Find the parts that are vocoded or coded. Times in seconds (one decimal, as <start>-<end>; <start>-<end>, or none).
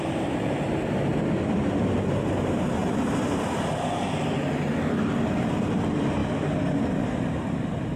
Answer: 0.0-1.1; 2.2-6.2; 6.9-8.0